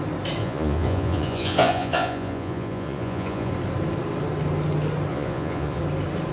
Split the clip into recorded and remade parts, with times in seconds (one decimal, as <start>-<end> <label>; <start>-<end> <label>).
0.0-0.4 recorded; 0.4-3.5 remade; 3.5-5.1 recorded; 5.1-5.8 remade; 5.8-6.3 recorded